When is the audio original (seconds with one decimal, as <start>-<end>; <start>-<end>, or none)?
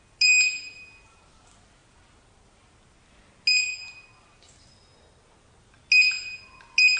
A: 0.0-7.0